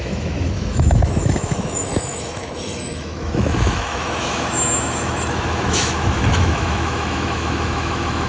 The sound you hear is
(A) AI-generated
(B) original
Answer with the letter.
A